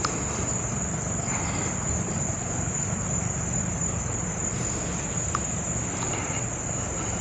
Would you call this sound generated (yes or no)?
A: no